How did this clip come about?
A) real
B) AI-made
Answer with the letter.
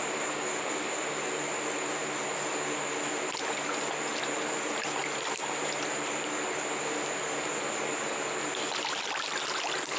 A